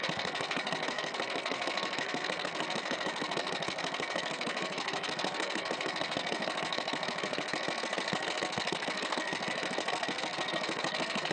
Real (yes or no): no